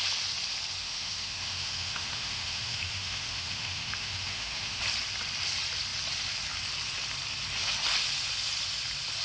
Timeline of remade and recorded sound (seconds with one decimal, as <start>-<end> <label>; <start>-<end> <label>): 0.0-0.8 recorded; 0.8-4.8 remade; 4.8-9.2 recorded